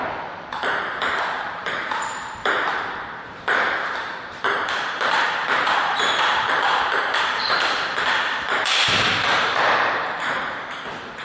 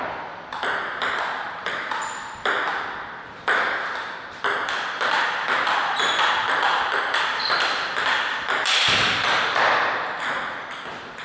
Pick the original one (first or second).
second